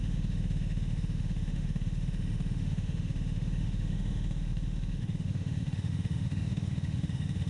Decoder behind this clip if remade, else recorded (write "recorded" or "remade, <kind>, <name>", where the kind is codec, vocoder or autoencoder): remade, autoencoder, DAC-VAE